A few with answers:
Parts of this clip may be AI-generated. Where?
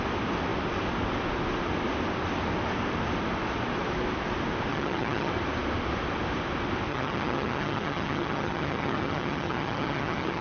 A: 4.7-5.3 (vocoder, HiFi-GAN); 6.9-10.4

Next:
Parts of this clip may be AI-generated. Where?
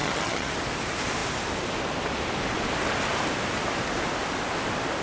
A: 0.0-0.5 (vocoder, HiFi-GAN)